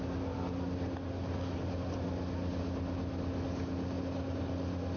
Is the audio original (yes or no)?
yes